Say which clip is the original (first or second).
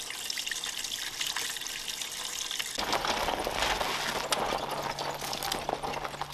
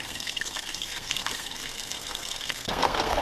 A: first